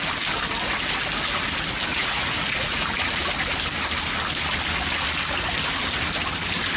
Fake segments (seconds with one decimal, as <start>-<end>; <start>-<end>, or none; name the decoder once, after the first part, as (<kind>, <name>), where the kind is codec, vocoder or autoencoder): 1.9-3.1 (vocoder, Vocos)